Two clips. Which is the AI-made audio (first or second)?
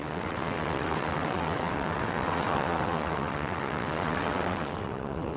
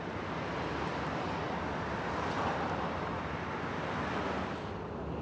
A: first